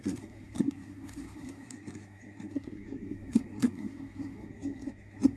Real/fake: fake